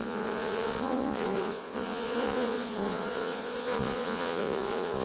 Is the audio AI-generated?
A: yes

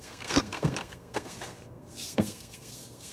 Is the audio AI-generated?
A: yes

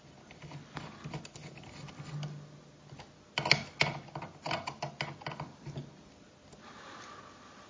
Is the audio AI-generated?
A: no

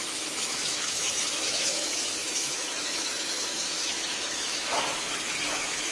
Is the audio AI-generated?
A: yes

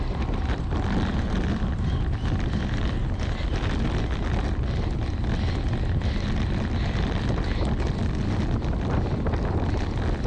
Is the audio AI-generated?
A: no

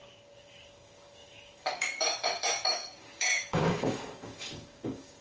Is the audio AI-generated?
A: yes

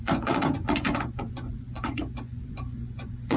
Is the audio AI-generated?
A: yes